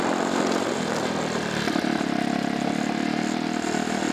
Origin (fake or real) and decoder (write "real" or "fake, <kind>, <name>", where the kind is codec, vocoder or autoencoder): real